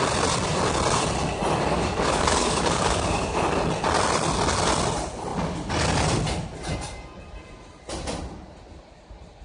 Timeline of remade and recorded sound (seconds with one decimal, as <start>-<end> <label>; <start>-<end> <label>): 0.0-1.7 recorded; 1.7-3.4 remade; 3.4-9.4 recorded